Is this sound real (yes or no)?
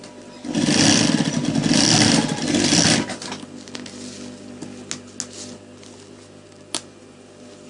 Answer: yes